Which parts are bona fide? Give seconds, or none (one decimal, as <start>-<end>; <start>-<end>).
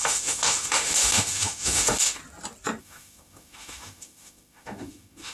2.2-2.8